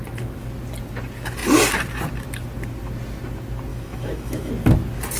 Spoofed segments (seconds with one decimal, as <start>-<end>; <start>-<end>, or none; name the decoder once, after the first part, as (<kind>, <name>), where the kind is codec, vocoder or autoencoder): 3.7-4.5 (autoencoder, DAC-VAE)